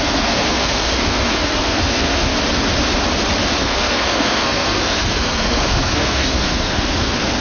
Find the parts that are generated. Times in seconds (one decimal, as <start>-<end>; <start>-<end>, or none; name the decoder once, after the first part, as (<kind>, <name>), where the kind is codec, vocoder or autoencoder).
0.0-2.3 (codec, SNAC); 3.6-7.4